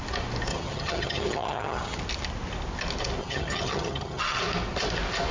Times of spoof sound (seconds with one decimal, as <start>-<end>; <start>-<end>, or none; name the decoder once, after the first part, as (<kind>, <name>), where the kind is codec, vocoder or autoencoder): 0.5-2.0 (vocoder, HiFi-GAN); 3.2-4.4